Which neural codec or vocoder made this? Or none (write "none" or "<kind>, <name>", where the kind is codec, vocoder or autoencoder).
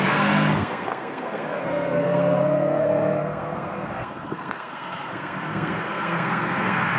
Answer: codec, SNAC